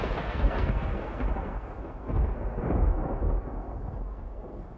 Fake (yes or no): yes